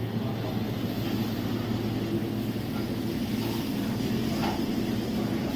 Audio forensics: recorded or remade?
recorded